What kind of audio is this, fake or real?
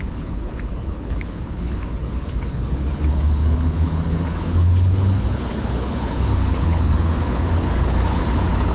fake